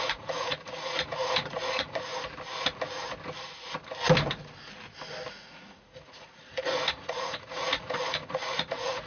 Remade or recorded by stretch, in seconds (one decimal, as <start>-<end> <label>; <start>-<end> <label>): 0.0-2.1 remade; 2.1-5.3 recorded; 5.3-9.1 remade

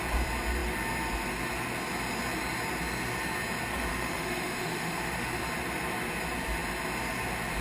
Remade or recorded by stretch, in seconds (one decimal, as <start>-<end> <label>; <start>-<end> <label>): 0.0-3.9 recorded; 3.9-5.4 remade; 5.4-7.6 recorded